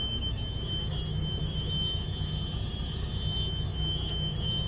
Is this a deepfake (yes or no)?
yes